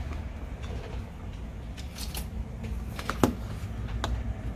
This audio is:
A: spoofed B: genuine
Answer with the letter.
B